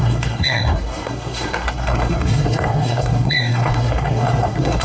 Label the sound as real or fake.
fake